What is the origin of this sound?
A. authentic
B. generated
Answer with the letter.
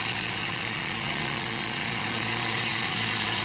B